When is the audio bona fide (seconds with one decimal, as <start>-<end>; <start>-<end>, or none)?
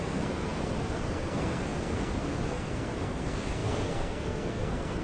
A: none